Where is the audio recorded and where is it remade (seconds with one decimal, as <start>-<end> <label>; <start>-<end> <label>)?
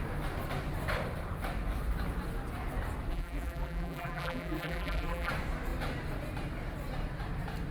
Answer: 0.0-3.1 recorded; 3.1-5.3 remade; 5.3-7.7 recorded